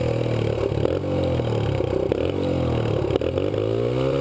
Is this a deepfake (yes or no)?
no